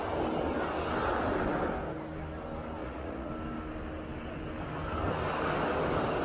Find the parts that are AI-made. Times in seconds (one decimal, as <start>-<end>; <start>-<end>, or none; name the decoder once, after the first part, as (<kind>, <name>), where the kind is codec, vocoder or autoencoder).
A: 2.8-3.3 (vocoder, Vocos)

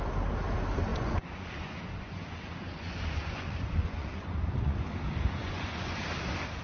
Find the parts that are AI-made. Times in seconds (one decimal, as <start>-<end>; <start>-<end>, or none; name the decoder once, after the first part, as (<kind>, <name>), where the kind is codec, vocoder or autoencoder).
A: 0.9-4.9 (vocoder, Vocos); 5.4-6.0

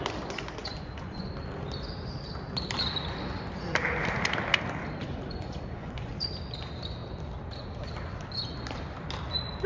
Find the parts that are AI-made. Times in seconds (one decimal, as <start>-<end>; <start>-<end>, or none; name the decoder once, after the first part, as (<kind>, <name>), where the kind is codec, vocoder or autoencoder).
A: 0.6-1.3 (vocoder, Vocos); 5.0-6.1